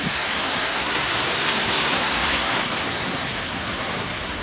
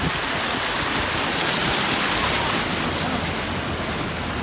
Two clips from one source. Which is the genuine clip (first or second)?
second